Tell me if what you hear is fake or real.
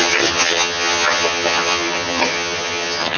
fake